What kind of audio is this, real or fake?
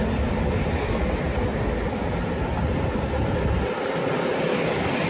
real